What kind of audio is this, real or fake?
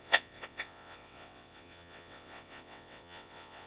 fake